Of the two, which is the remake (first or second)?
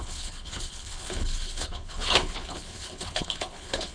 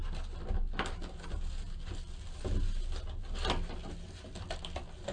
first